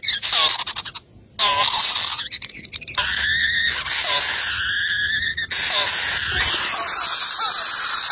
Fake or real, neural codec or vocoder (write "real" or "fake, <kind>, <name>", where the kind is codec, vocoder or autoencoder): real